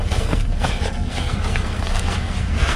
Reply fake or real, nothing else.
fake